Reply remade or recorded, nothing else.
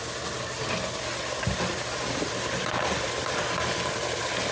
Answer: recorded